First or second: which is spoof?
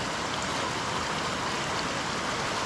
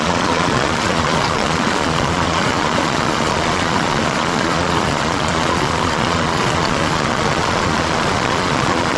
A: second